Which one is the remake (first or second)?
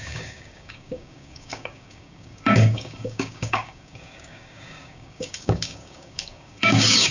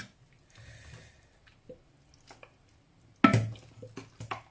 first